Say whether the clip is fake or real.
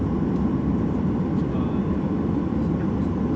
real